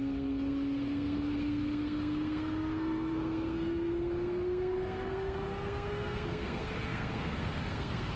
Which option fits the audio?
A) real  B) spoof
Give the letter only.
B